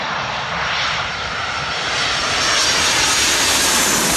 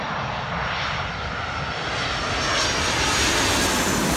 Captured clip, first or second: second